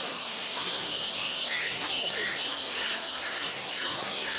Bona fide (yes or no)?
no